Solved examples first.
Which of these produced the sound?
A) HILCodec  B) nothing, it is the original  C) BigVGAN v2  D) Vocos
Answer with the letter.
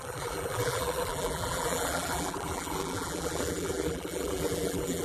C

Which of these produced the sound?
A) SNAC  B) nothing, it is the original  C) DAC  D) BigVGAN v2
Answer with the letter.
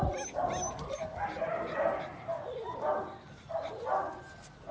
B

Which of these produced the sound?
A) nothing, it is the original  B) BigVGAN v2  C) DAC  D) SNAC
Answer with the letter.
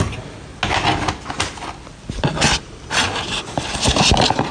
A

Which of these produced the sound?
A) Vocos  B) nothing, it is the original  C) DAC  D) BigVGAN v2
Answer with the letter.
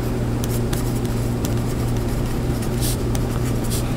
D